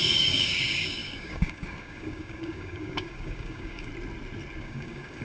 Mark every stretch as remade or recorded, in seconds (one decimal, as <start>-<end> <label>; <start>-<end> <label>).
0.0-3.9 remade; 3.9-4.6 recorded; 4.6-5.2 remade